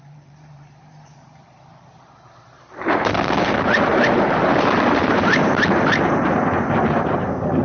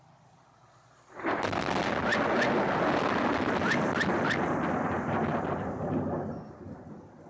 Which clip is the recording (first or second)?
second